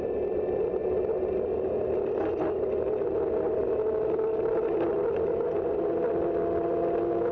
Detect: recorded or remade recorded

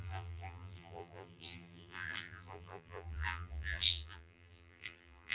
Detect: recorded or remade remade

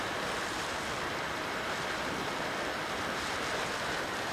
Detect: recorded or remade remade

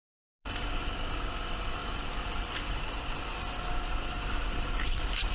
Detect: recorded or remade recorded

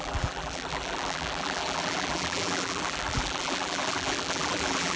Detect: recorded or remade remade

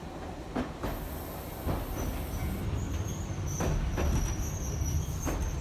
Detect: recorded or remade recorded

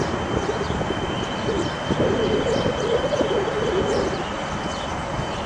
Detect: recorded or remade recorded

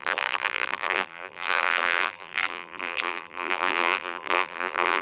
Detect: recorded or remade remade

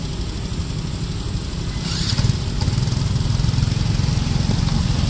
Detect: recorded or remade recorded